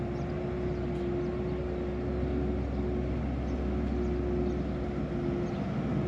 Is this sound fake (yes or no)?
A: no